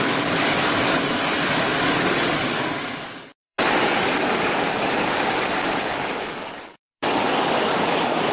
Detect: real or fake fake